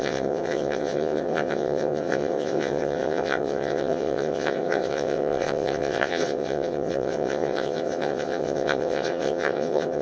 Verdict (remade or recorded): remade